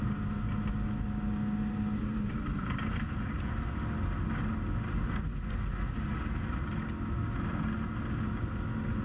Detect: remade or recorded recorded